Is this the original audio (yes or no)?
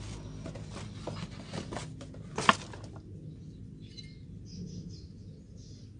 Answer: yes